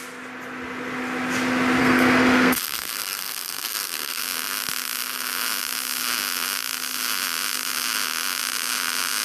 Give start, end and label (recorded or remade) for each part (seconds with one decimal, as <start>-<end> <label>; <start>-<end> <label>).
0.0-1.8 recorded; 1.8-4.2 remade; 4.2-9.2 recorded